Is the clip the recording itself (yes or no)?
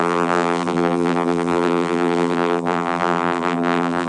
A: no